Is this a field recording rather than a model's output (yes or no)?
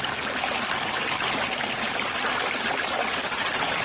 yes